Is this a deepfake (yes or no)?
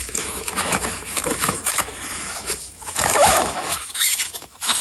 yes